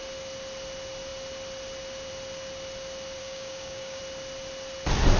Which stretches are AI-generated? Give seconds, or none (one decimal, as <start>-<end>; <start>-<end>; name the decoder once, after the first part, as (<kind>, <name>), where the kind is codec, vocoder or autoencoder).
3.2-4.0 (codec, DAC)